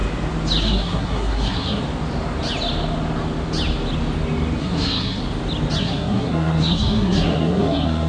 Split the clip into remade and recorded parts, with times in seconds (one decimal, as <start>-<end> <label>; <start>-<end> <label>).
0.0-0.6 recorded; 0.6-1.8 remade; 1.8-4.6 recorded; 4.6-5.2 remade; 5.2-5.8 recorded; 5.8-8.1 remade